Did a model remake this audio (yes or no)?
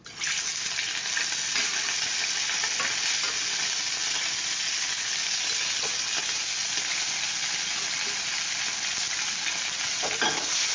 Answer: no